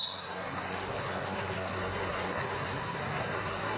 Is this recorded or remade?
remade